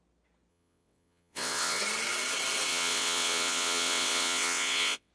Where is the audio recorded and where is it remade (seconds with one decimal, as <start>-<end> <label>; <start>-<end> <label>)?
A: 0.0-0.5 recorded; 0.5-1.8 remade; 1.8-2.7 recorded; 2.7-5.1 remade

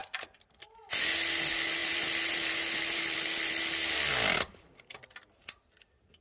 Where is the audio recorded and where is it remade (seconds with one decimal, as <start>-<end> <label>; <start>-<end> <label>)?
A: 0.0-1.8 recorded; 1.8-3.5 remade; 3.5-4.1 recorded; 4.1-5.4 remade; 5.4-6.2 recorded